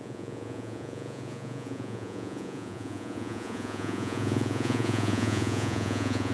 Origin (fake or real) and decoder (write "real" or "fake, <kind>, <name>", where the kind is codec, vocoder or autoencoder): fake, vocoder, Vocos